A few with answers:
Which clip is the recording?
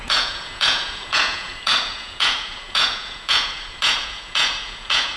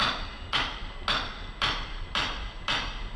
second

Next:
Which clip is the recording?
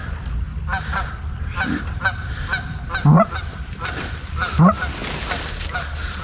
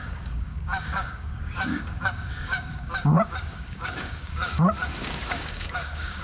first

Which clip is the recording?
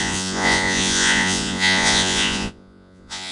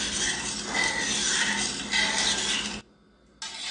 second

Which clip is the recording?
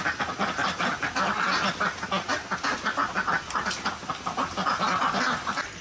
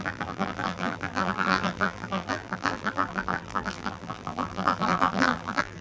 first